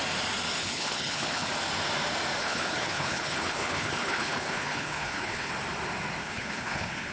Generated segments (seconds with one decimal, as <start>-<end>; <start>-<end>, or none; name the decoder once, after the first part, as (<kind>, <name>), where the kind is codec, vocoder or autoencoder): 0.6-1.5 (codec, HILCodec); 2.4-5.5; 6.2-7.1